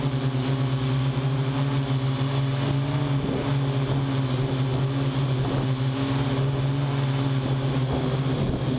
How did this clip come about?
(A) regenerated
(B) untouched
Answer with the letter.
B